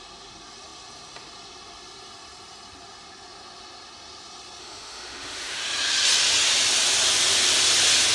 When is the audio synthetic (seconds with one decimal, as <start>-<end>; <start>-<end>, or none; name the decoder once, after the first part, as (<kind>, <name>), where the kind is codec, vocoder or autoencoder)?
4.6-5.6 (autoencoder, DAC-VAE)